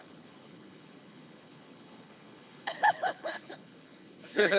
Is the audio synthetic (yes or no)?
yes